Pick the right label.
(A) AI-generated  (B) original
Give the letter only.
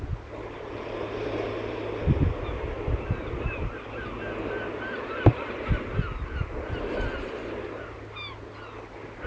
B